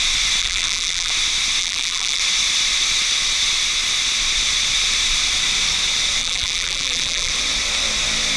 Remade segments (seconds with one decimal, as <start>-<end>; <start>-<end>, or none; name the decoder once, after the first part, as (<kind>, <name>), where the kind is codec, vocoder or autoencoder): 0.4-1.1 (vocoder, BigVGAN v2); 1.6-2.2; 6.2-7.3

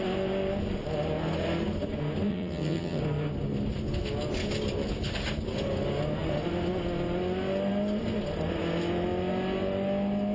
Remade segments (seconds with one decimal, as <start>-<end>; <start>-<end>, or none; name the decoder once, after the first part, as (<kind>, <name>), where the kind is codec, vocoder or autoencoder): 2.3-3.0 (vocoder, HiFi-GAN)

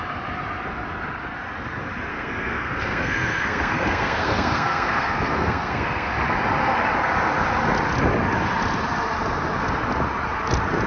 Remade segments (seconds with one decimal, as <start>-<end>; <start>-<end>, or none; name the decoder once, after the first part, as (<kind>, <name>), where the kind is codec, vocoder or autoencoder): 2.1-6.1 (codec, SNAC)

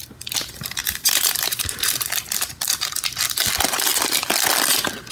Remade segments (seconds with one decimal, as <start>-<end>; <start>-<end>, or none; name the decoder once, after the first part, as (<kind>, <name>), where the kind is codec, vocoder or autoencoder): 0.8-2.1 (vocoder, BigVGAN v2)

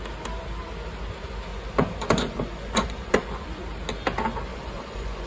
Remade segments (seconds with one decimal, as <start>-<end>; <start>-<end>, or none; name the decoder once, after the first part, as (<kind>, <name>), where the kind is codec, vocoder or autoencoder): 1.5-3.3 (vocoder, Vocos); 4.5-5.3

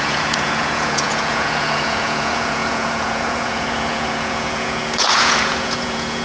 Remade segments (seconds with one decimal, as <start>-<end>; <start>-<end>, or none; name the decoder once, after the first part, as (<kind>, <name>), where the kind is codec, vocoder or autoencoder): 0.0-6.2 (vocoder, Vocos)

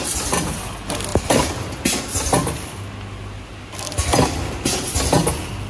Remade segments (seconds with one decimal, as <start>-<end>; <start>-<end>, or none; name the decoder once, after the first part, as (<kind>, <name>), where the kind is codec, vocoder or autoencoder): none

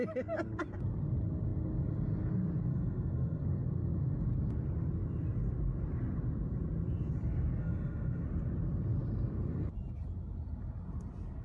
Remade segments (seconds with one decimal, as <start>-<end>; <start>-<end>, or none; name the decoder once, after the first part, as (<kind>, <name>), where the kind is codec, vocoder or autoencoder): 2.7-3.4 (codec, SNAC); 7.6-8.2